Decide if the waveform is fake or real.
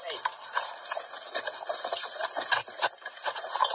fake